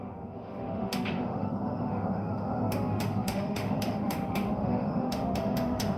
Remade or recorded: remade